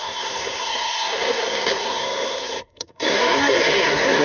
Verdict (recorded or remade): remade